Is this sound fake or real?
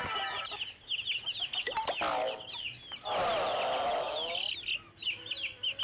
real